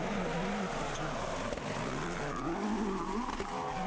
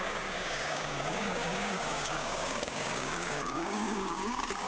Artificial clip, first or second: second